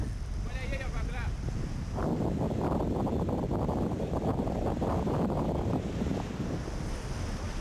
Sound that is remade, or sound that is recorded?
recorded